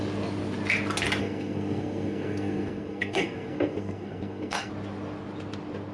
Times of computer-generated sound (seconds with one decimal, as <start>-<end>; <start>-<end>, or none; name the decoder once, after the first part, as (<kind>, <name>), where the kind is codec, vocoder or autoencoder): 1.2-4.7 (codec, SNAC)